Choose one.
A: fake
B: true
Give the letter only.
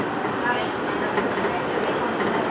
B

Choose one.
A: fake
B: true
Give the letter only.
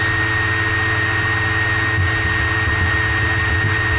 B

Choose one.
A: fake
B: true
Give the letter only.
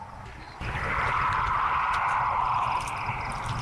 B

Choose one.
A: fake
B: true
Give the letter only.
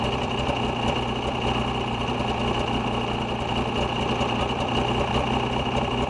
B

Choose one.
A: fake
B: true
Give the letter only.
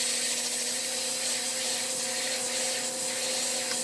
B